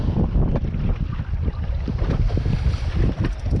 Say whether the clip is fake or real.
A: real